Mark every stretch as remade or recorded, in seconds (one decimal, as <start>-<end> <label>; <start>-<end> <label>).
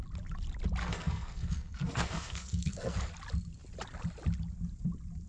0.0-0.8 recorded; 0.8-3.1 remade; 3.1-5.3 recorded